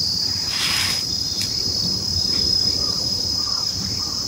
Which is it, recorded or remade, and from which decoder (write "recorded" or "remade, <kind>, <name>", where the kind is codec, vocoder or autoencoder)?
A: remade, vocoder, BigVGAN v2